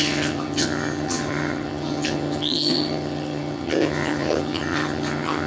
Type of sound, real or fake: fake